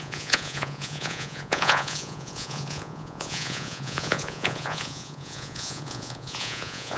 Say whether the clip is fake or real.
fake